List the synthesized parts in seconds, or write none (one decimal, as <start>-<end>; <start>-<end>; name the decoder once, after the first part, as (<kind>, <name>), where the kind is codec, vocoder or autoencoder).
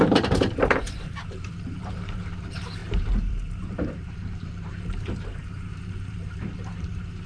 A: 0.0-7.3 (vocoder, BigVGAN v2)